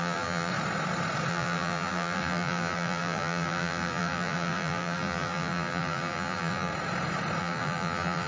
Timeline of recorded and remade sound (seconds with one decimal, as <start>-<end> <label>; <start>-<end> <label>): 0.0-0.5 remade; 0.5-1.3 recorded; 1.3-6.7 remade; 6.7-7.4 recorded; 7.4-8.3 remade